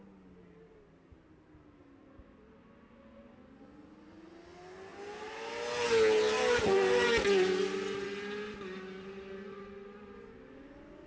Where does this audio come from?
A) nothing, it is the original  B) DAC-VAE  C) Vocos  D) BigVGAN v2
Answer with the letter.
A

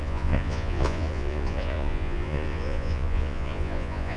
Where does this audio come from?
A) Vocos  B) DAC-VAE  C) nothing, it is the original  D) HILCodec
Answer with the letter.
A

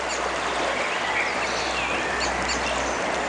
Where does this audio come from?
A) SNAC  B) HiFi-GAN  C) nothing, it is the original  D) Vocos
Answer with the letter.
C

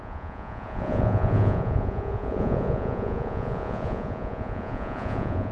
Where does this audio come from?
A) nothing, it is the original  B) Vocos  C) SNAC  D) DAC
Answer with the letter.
B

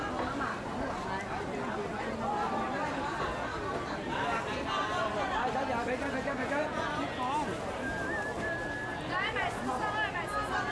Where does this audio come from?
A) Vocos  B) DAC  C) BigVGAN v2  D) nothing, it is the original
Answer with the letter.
D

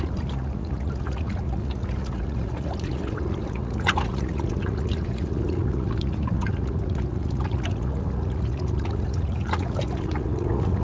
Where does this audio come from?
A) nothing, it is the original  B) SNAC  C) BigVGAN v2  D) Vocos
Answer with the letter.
D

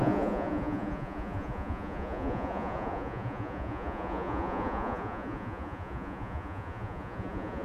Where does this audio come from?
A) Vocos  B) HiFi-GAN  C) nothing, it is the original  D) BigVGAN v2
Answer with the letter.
A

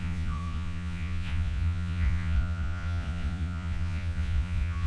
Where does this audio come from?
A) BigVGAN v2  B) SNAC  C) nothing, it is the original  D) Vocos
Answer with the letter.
D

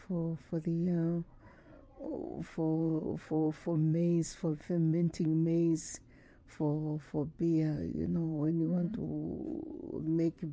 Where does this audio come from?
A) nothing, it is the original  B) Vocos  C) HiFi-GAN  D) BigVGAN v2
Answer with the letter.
B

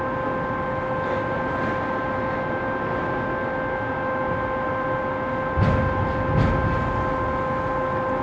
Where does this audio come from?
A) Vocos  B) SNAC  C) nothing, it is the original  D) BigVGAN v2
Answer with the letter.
C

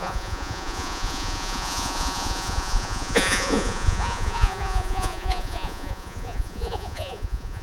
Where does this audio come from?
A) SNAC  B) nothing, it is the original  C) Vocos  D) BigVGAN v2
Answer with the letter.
C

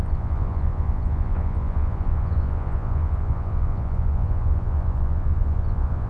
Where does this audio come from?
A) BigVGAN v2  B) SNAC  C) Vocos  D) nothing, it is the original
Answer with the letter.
C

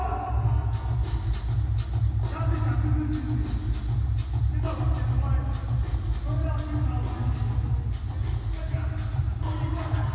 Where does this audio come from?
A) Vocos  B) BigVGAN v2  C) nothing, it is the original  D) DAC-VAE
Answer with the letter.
C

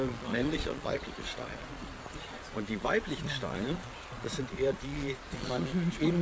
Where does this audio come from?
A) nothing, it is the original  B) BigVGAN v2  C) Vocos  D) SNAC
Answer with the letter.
C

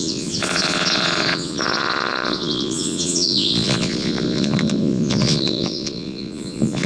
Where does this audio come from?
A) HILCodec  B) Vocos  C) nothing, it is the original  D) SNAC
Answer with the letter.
B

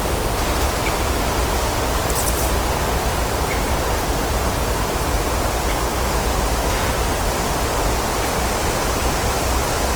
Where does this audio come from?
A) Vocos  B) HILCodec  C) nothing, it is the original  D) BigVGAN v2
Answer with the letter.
C